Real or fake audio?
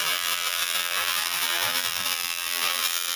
fake